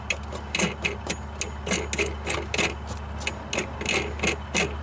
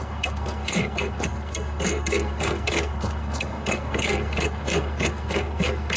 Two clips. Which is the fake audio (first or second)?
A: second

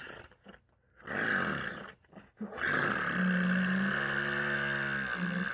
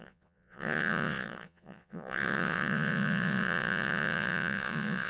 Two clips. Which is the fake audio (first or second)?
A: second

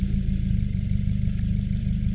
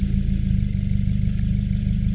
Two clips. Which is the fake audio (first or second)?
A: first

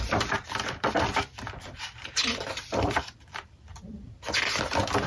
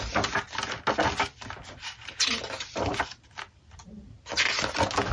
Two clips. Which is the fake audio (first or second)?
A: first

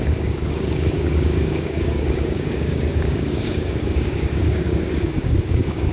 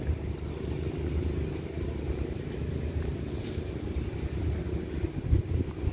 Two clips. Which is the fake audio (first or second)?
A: first